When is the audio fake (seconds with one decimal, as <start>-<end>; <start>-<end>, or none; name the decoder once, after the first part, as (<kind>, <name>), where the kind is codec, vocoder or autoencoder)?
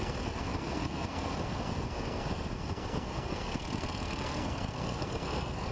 0.0-5.7 (codec, SNAC)